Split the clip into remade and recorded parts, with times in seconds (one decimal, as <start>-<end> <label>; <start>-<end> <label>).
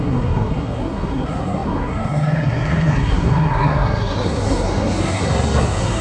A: 0.0-6.0 remade